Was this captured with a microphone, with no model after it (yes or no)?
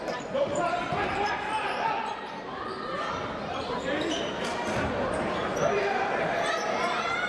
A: no